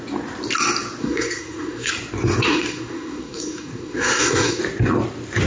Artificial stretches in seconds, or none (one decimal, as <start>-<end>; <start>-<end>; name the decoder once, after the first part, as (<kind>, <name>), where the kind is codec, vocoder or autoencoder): 1.0-1.9 (codec, SNAC); 2.4-4.6